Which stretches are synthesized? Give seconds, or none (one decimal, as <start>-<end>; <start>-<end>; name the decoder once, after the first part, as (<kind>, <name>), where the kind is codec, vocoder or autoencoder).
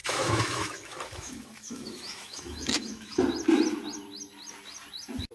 0.0-3.2 (autoencoder, DAC-VAE)